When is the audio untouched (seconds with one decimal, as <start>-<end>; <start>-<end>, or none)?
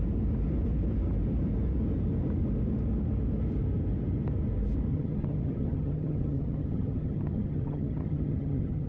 0.0-4.9